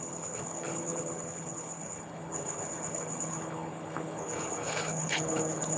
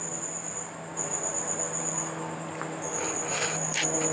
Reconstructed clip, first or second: first